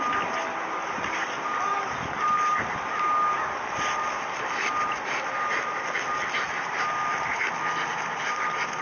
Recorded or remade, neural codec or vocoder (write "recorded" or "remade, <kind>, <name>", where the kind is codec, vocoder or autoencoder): recorded